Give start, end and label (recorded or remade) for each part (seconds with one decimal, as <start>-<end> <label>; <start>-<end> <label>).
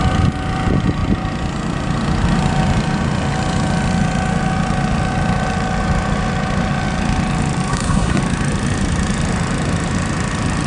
0.0-7.7 recorded; 7.7-8.2 remade; 8.2-10.7 recorded